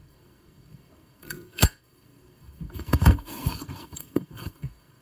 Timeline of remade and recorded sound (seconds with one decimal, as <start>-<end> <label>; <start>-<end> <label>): 0.0-5.0 remade